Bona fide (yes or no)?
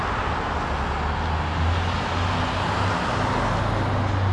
yes